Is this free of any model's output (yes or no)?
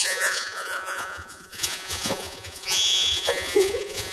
no